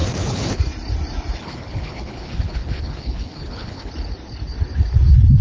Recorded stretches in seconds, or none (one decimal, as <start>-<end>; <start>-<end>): 0.6-1.4; 3.9-5.4

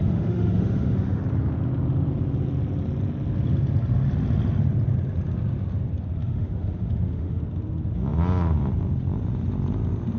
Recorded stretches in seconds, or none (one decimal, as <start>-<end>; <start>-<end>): 1.2-6.2; 7.4-10.2

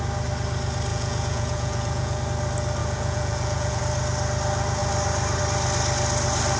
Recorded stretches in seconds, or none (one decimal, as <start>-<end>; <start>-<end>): 0.0-0.9; 2.2-2.8; 3.8-6.6

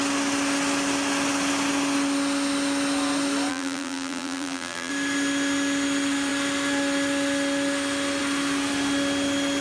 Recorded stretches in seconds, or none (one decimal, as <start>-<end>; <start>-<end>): 0.0-3.5; 4.9-9.6

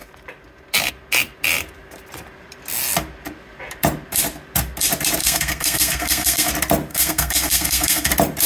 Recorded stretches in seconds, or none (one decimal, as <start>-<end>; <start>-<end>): 0.0-5.2; 6.5-6.9; 8.1-8.5

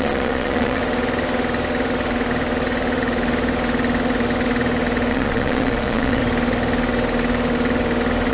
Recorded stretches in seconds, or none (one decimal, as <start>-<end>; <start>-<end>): 0.8-5.1; 6.2-8.3

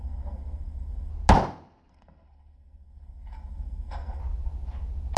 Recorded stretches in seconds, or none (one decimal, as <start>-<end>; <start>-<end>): 1.1-1.9; 4.2-5.2

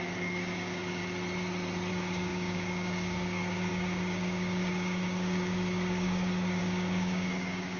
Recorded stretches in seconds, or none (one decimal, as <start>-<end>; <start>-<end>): 1.0-1.9